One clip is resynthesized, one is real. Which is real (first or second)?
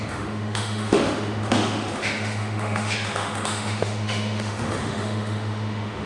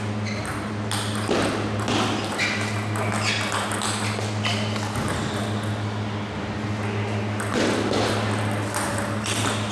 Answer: second